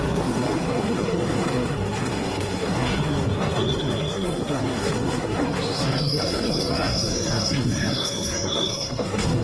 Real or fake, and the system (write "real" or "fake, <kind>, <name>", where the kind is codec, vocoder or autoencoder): fake, codec, SNAC